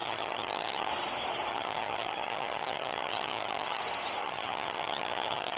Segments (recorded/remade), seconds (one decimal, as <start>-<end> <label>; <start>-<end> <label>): 0.0-0.9 remade; 0.9-1.5 recorded; 1.5-3.8 remade; 3.8-4.2 recorded; 4.2-5.6 remade